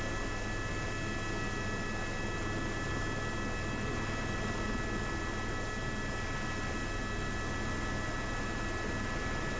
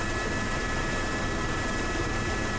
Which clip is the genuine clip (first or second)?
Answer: first